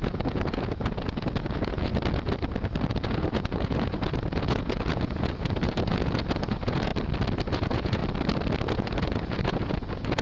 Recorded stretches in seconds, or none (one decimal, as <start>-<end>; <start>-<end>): 1.9-2.9; 6.9-7.5; 8.0-8.7